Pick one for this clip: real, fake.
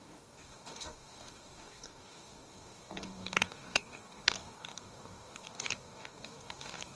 fake